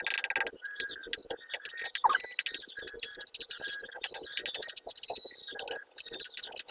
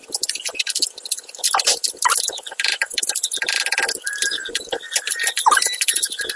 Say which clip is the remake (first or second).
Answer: second